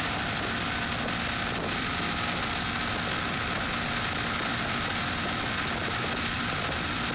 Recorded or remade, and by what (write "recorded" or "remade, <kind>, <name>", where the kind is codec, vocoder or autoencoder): recorded